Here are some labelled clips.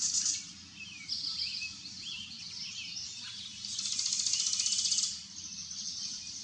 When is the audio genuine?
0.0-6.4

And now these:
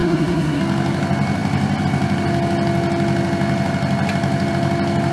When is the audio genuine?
0.6-5.1

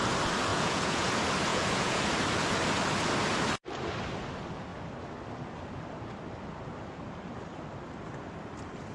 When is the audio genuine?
0.0-0.5; 1.1-1.5; 2.0-8.9

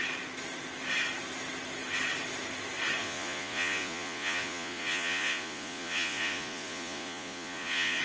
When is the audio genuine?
0.0-3.0